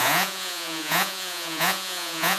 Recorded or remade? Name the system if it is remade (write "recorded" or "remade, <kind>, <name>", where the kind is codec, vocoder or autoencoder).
remade, vocoder, Vocos